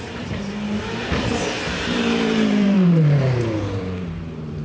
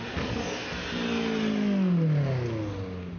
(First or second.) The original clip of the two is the second